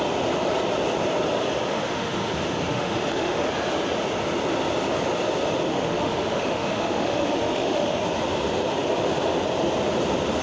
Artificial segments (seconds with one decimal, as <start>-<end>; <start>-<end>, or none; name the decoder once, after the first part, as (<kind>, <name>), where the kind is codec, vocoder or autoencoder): 1.7-2.3 (autoencoder, DAC-VAE); 2.7-3.5; 5.7-8.0